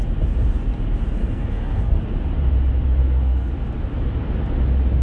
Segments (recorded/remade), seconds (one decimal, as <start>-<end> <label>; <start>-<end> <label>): 0.0-1.2 recorded; 1.2-2.0 remade; 2.0-3.0 recorded; 3.0-3.5 remade; 3.5-5.0 recorded

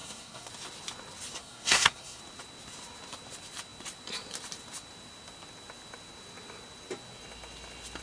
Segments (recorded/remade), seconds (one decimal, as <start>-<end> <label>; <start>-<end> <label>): 0.0-0.5 remade; 0.5-1.4 recorded; 1.4-2.2 remade; 2.2-8.0 recorded

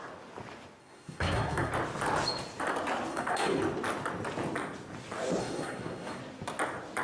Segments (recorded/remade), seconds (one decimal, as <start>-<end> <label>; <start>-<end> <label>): 0.0-0.8 recorded; 0.8-1.7 remade; 1.7-3.1 recorded; 3.1-3.6 remade; 3.6-5.4 recorded; 5.4-6.2 remade; 6.2-7.0 recorded

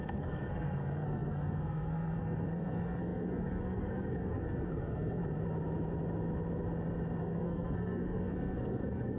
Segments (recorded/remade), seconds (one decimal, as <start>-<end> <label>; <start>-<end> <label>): 0.0-5.2 remade; 5.2-7.2 recorded; 7.2-9.2 remade

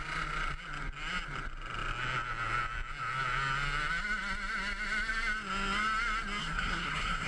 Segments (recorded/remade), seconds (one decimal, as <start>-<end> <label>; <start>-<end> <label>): 0.0-6.4 recorded; 6.4-7.3 remade

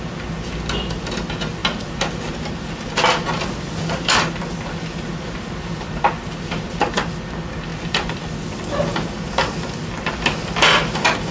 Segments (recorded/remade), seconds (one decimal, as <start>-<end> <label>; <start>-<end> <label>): 0.0-11.3 recorded

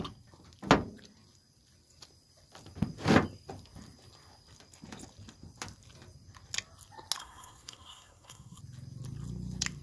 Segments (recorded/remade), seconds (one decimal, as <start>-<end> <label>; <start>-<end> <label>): 0.0-7.2 recorded; 7.2-8.6 remade; 8.6-9.8 recorded

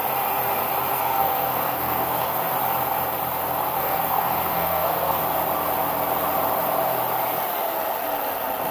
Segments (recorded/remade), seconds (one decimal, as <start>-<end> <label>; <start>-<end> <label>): 0.0-0.9 recorded; 0.9-2.4 remade; 2.4-3.8 recorded; 3.8-5.2 remade; 5.2-8.7 recorded